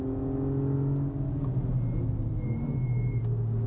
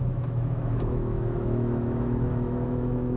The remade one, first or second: second